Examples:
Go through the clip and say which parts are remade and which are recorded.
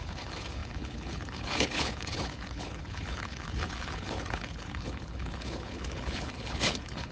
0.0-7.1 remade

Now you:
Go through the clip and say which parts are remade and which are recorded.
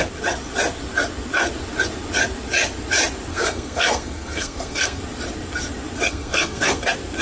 0.0-3.3 recorded; 3.3-5.0 remade; 5.0-6.1 recorded; 6.1-6.8 remade; 6.8-7.2 recorded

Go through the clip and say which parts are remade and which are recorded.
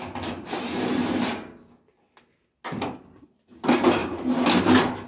0.0-5.1 recorded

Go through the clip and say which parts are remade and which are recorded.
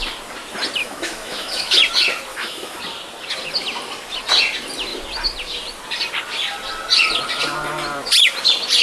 0.0-0.8 recorded; 0.8-1.8 remade; 1.8-2.3 recorded; 2.3-2.8 remade; 2.8-8.8 recorded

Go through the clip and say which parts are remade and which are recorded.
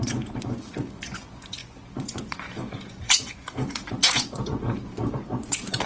0.0-5.9 remade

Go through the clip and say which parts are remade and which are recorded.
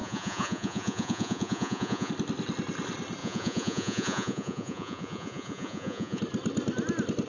0.0-2.1 remade; 2.1-3.2 recorded; 3.2-6.2 remade; 6.2-7.3 recorded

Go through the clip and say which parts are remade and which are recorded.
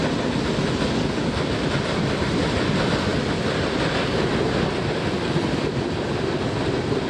0.0-7.1 recorded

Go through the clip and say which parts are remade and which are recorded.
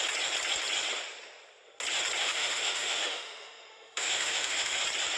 0.0-2.2 recorded; 2.2-4.8 remade; 4.8-5.2 recorded